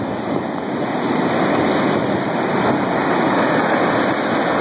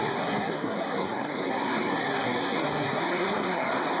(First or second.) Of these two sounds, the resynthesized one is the second